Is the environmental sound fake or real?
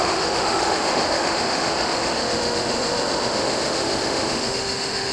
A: fake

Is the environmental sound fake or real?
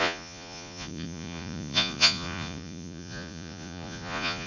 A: fake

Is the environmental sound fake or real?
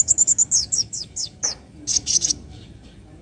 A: fake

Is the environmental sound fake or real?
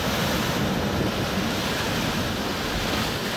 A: real